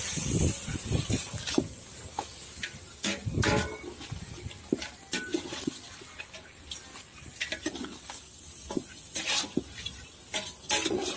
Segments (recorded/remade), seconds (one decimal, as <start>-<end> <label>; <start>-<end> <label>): 0.0-5.3 recorded; 5.3-6.2 remade; 6.2-11.2 recorded